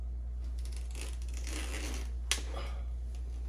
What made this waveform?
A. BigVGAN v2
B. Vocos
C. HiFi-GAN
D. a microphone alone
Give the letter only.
D